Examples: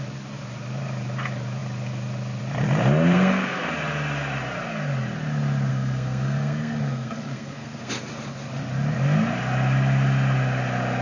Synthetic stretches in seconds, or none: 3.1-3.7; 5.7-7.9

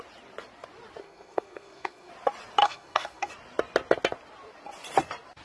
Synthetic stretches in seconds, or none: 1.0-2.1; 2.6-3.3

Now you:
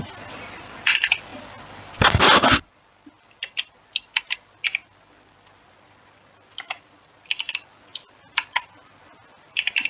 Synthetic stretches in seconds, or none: none

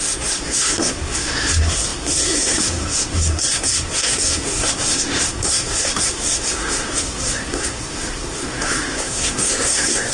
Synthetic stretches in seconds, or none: 0.0-10.1